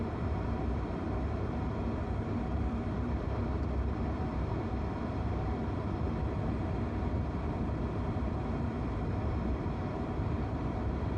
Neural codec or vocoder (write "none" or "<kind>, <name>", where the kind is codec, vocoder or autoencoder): vocoder, BigVGAN v2